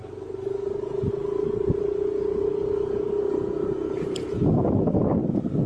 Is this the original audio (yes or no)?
yes